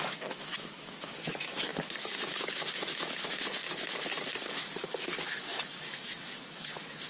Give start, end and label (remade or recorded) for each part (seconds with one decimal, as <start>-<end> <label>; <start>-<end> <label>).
0.0-3.6 remade; 3.6-4.8 recorded; 4.8-7.1 remade